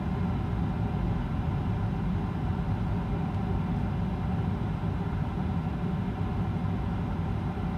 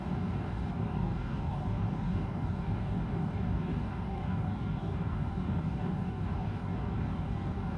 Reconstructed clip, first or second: second